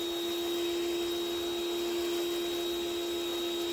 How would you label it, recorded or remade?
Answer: recorded